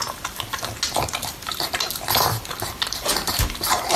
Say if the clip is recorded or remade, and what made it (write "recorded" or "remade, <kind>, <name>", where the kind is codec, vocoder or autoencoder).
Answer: recorded